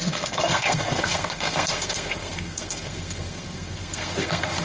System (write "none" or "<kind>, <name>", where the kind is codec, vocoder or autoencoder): codec, SNAC